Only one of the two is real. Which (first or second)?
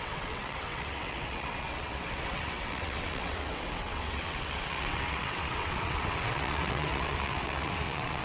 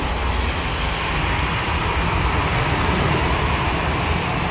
second